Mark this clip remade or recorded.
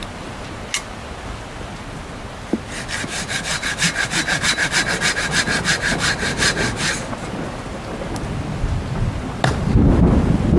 recorded